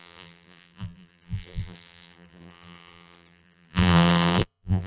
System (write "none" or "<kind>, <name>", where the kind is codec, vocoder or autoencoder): vocoder, BigVGAN v2